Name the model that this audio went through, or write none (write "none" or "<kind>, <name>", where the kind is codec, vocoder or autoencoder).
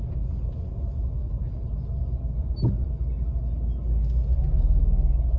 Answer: none